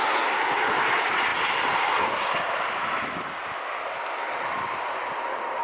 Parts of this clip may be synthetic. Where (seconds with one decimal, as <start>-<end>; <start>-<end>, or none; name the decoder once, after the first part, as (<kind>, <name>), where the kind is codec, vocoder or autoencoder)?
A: none